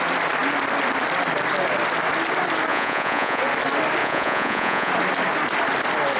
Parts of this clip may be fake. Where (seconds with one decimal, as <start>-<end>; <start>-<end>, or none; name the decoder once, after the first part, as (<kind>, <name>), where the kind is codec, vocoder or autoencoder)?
2.7-3.4 (vocoder, Vocos); 4.0-4.9